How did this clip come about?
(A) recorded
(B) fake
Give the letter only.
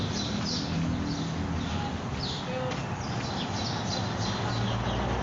A